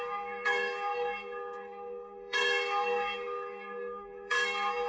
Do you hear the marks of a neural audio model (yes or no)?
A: yes